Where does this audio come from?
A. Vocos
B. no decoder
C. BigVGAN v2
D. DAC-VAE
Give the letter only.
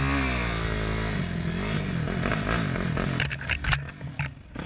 B